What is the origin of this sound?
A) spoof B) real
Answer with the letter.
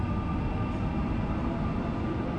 B